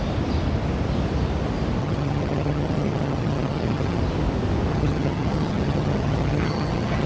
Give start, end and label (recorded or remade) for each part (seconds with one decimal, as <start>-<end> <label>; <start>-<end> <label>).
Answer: 0.0-1.8 recorded; 1.8-4.0 remade; 4.0-4.7 recorded; 4.7-7.1 remade